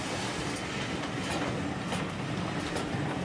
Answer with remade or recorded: recorded